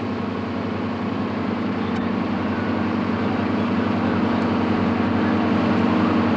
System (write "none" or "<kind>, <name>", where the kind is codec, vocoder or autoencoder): none